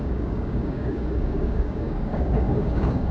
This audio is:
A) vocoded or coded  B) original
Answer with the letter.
A